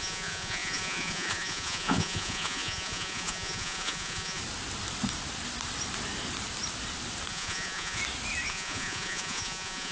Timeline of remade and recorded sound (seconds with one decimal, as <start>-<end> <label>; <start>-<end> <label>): 0.0-4.4 remade; 4.4-7.3 recorded; 7.3-8.0 remade; 8.0-8.5 recorded; 8.5-9.9 remade